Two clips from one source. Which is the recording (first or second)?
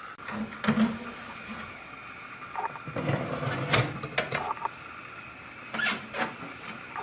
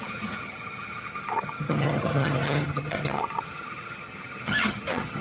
first